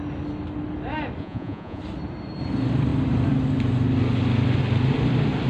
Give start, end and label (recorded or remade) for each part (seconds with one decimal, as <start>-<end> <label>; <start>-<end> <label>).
0.0-1.2 recorded; 1.2-1.8 remade; 1.8-5.5 recorded